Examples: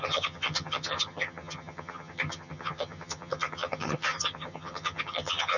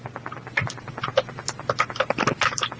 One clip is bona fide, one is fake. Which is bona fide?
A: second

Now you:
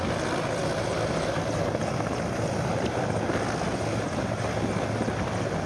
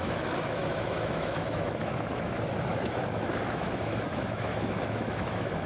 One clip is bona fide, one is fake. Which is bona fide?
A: first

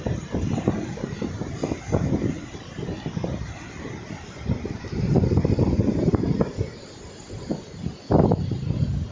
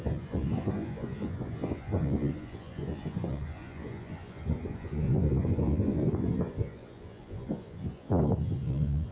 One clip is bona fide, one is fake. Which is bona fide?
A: first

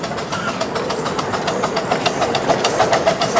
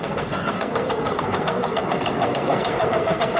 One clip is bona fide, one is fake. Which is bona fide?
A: first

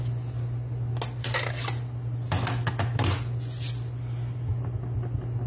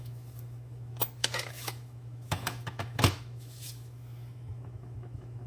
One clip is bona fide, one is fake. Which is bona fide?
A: first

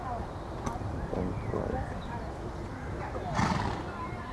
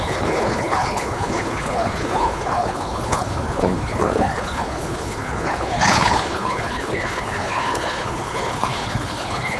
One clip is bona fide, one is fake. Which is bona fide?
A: first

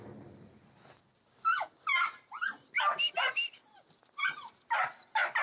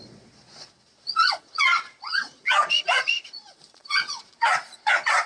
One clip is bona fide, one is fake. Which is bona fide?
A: first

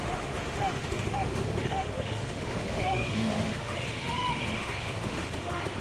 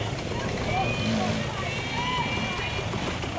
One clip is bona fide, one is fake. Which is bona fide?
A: second